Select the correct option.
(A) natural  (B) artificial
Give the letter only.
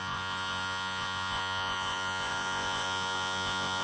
B